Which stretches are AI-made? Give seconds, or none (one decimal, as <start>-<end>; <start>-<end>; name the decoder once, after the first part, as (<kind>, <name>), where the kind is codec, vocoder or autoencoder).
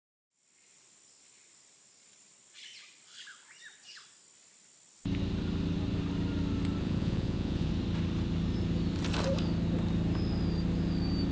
6.8-7.7 (vocoder, Vocos)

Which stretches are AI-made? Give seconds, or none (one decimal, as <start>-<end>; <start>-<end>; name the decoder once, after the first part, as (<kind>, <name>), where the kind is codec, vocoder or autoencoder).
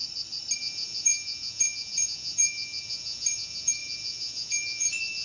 0.6-5.2 (vocoder, Vocos)